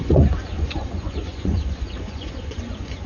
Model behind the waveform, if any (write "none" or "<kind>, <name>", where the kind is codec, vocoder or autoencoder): vocoder, Vocos